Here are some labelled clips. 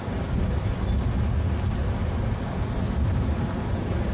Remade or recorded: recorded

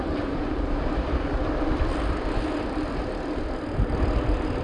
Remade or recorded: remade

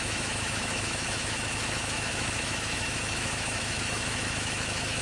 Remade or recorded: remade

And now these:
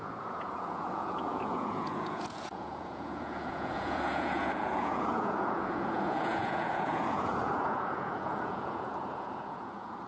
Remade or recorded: remade